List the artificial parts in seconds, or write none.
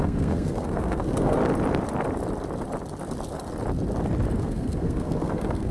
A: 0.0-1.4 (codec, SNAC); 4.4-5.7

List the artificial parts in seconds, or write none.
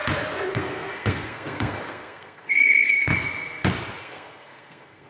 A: 0.5-3.1 (codec, SNAC); 4.0-5.1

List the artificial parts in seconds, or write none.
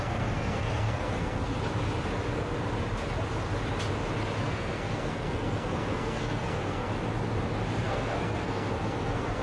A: 0.0-1.5 (codec, SNAC); 4.4-6.9; 7.8-9.4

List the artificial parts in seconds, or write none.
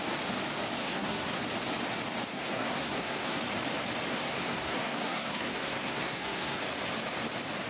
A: 0.8-1.4 (codec, SNAC); 2.3-3.4; 4.1-6.6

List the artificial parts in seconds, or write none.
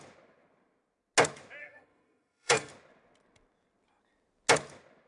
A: 1.6-2.7 (codec, SNAC)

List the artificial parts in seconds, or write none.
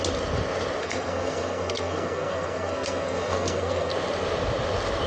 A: 0.8-3.9 (codec, SNAC)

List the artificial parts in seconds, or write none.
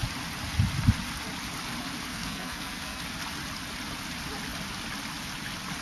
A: 2.1-3.0 (codec, SNAC)